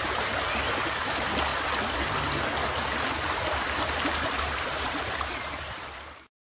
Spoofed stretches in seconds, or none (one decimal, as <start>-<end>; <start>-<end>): 0.0-1.5; 3.1-6.5